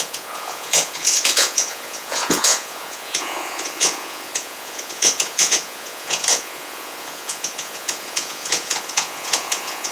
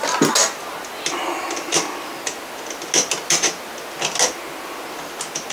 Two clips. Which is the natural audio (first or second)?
second